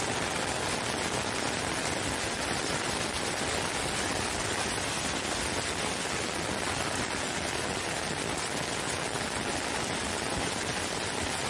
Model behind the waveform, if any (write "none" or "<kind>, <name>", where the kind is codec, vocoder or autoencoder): none